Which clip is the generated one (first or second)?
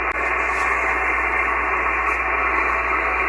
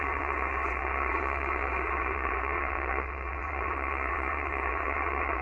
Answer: second